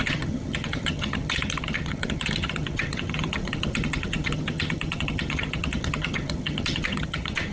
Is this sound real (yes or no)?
no